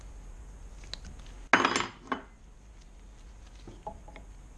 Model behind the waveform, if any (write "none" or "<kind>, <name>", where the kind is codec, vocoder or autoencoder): none